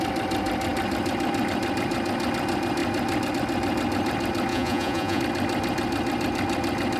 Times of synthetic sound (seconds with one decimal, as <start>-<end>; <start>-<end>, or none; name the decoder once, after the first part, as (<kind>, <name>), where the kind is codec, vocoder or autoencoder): 4.5-5.2 (vocoder, Vocos)